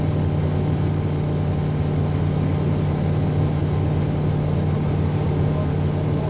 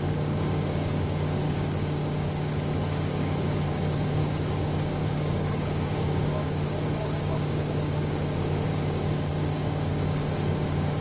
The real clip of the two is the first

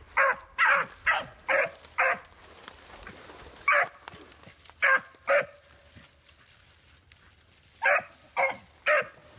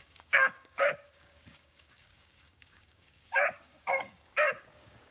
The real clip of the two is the first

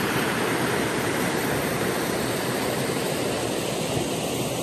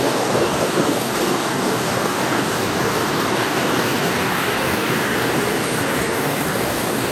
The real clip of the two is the first